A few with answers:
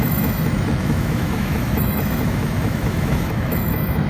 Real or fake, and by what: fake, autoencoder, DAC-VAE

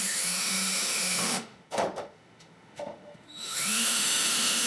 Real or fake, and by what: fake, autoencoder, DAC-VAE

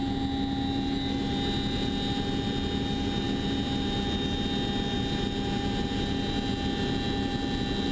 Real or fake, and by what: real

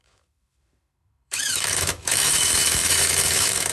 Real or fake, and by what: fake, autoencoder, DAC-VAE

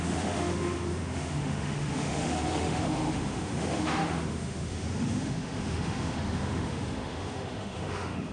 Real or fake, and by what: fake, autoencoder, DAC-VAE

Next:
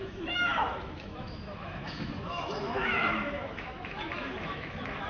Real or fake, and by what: fake, autoencoder, DAC-VAE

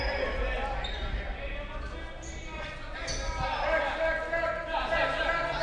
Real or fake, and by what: real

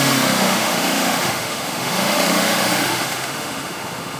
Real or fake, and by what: fake, autoencoder, DAC-VAE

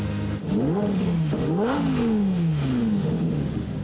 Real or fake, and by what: fake, autoencoder, DAC-VAE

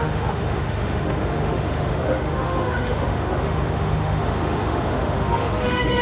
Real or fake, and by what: fake, autoencoder, DAC-VAE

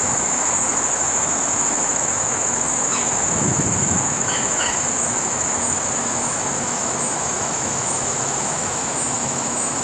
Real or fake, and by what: fake, autoencoder, DAC-VAE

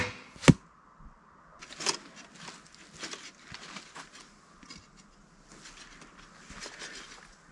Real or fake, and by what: real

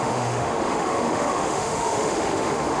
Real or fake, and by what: fake, autoencoder, DAC-VAE